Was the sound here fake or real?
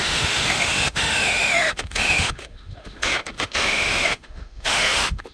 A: fake